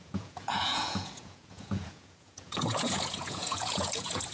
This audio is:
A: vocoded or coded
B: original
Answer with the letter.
A